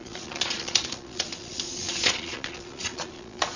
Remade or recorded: remade